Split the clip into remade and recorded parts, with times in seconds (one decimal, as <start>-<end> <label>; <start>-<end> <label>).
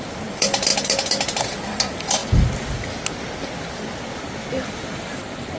0.0-5.6 recorded